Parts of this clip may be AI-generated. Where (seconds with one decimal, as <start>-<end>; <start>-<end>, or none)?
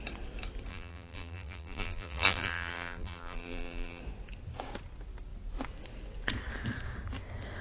0.7-4.0